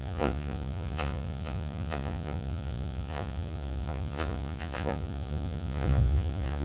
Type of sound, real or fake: fake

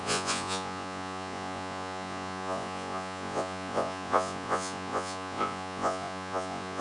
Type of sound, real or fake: fake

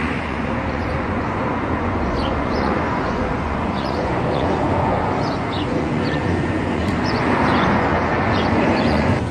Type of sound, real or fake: fake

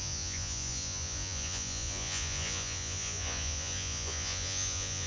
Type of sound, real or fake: fake